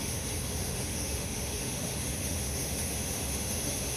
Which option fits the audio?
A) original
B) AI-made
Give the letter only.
B